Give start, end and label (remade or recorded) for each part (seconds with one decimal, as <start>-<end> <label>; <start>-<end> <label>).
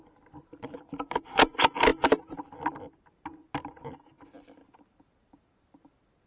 0.0-6.3 recorded